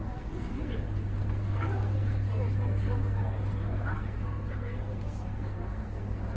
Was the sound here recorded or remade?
remade